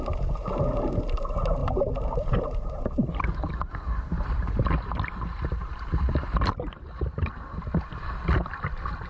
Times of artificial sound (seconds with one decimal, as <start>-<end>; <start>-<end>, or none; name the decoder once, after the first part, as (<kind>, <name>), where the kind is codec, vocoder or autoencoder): 1.6-4.9 (vocoder, BigVGAN v2); 5.6-7.3